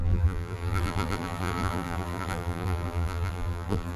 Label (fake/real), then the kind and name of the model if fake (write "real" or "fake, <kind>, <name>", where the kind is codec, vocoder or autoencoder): fake, vocoder, BigVGAN v2